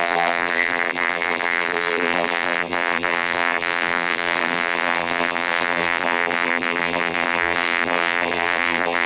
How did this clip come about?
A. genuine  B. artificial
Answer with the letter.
B